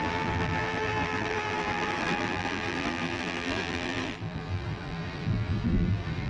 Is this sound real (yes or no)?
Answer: no